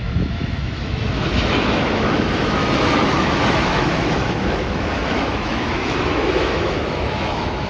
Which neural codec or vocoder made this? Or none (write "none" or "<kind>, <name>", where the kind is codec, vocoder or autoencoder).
autoencoder, DAC-VAE